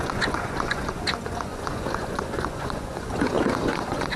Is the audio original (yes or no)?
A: no